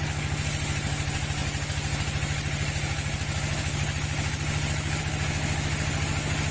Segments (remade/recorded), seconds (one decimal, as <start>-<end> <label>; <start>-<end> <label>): 0.0-6.5 recorded

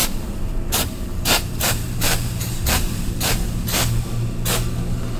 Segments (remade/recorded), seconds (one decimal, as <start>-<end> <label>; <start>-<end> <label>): 0.0-3.1 remade; 3.1-5.2 recorded

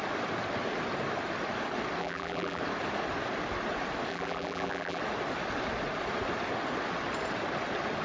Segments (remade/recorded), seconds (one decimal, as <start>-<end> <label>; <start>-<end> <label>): 0.0-2.0 recorded; 2.0-2.6 remade; 2.6-4.1 recorded; 4.1-5.0 remade; 5.0-8.0 recorded